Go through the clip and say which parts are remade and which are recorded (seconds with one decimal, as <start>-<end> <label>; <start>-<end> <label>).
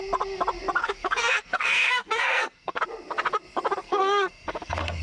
0.0-0.8 recorded; 0.8-2.8 remade; 2.8-3.8 recorded; 3.8-5.0 remade